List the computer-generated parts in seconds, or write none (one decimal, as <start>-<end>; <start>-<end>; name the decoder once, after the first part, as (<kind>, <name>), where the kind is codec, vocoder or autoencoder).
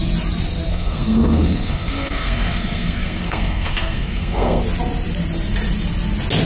0.7-4.6 (codec, SNAC)